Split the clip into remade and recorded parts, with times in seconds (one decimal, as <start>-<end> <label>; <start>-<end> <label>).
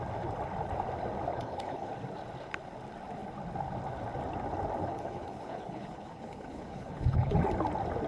0.0-1.3 recorded; 1.3-1.9 remade; 1.9-4.8 recorded; 4.8-7.4 remade; 7.4-8.1 recorded